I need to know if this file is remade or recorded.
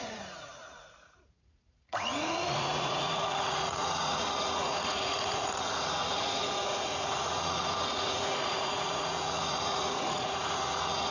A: remade